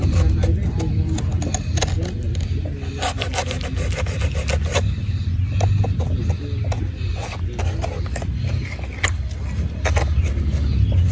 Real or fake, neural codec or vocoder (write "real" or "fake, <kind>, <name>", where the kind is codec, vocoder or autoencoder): real